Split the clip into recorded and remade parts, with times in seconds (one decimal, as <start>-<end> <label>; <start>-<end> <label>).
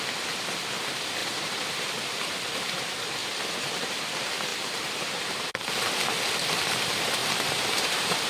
0.0-1.2 recorded; 1.2-2.8 remade; 2.8-3.2 recorded; 3.2-4.0 remade; 4.0-7.2 recorded; 7.2-8.3 remade